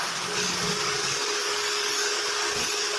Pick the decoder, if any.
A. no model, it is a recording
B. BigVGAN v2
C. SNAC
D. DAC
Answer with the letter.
D